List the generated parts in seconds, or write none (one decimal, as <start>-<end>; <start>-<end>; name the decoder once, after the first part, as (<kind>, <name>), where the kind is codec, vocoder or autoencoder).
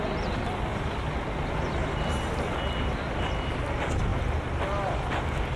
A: none